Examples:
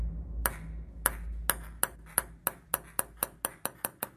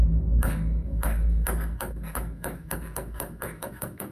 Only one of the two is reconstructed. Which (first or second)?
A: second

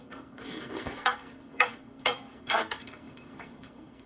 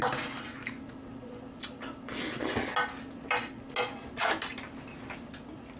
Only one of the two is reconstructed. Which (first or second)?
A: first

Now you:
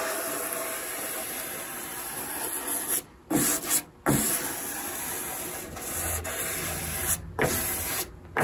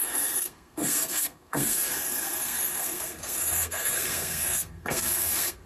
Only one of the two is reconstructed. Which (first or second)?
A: second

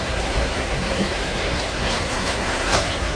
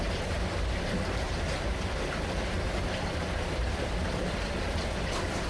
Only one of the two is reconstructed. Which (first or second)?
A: first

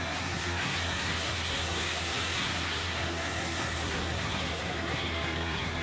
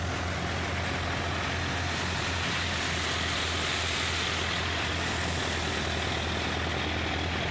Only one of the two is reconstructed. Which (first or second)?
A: first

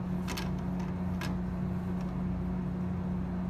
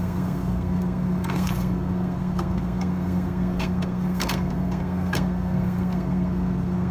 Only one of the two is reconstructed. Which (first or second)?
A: second